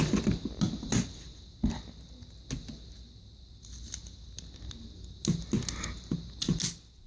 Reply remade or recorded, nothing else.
recorded